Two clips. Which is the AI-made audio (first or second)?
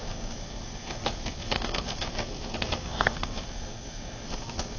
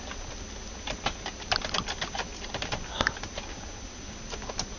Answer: first